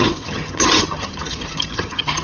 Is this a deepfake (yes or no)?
yes